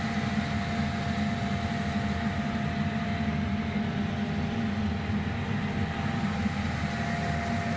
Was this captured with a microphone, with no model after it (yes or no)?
yes